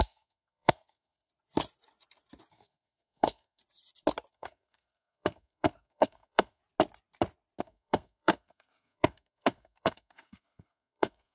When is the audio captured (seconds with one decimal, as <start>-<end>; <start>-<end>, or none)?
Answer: 1.3-2.5; 3.6-4.3; 6.6-7.6